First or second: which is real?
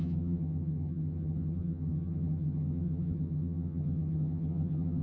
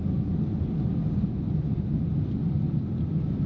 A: second